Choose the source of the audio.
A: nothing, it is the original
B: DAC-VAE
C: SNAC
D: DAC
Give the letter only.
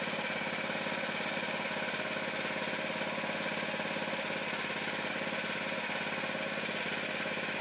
A